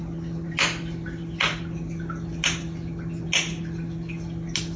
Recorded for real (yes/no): yes